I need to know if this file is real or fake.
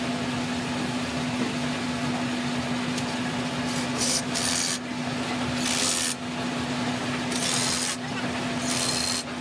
real